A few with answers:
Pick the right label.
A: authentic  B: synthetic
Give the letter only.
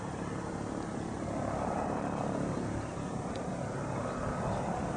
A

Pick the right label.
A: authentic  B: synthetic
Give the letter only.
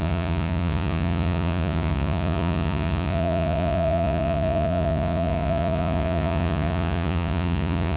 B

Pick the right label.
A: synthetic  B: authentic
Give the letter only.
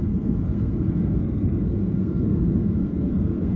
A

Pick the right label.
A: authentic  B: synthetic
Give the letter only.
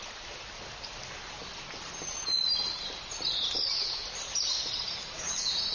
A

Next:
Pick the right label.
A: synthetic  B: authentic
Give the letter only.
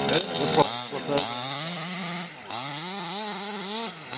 B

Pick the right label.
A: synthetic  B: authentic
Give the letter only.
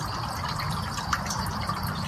B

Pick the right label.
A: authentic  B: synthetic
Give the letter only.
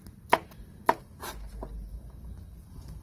A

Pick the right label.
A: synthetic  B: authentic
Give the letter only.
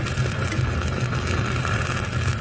B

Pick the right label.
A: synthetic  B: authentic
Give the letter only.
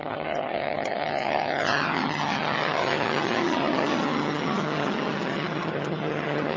A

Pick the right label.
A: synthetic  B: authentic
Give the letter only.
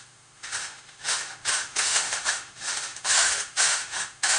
A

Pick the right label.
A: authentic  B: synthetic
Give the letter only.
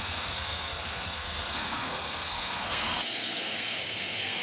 B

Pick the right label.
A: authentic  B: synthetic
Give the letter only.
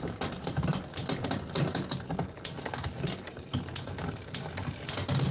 A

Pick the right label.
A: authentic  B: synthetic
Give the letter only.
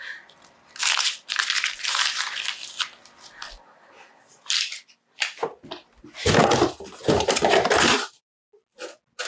A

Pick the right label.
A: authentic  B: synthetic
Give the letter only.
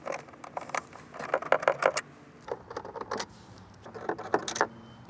A